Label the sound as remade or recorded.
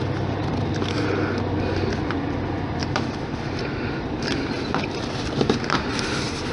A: remade